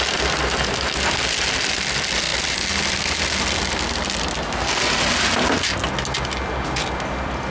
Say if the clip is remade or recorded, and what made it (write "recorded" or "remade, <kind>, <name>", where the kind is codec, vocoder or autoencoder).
recorded